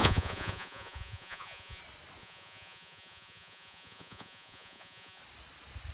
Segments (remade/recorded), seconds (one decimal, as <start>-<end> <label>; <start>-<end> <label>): 0.0-1.8 remade; 1.8-2.2 recorded; 2.2-5.2 remade; 5.2-5.9 recorded